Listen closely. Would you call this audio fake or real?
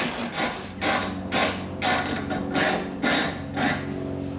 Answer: real